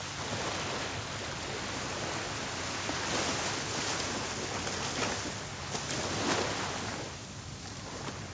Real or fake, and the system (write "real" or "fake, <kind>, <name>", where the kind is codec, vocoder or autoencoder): real